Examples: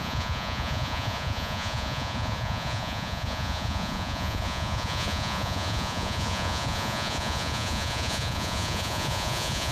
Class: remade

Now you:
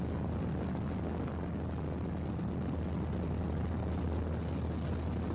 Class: recorded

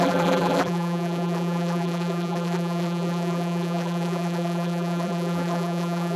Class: remade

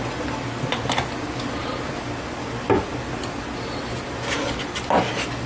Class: recorded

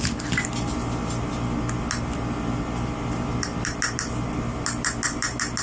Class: recorded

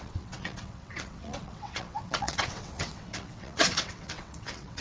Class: remade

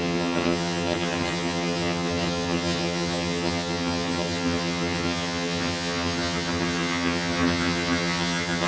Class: remade